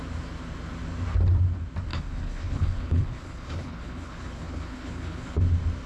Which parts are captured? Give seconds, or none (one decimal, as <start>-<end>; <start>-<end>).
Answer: 0.0-1.9; 5.4-5.9